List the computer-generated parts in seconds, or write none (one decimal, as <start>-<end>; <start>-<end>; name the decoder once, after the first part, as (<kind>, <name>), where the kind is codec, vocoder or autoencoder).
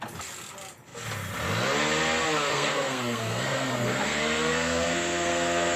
2.5-5.8 (codec, SNAC)